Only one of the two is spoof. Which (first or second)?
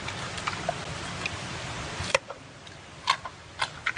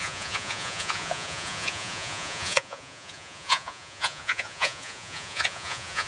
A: second